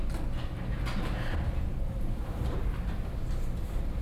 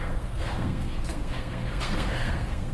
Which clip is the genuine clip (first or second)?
first